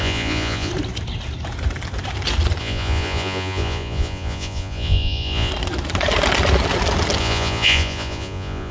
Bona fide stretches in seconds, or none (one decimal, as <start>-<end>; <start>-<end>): 0.7-2.6; 5.5-7.2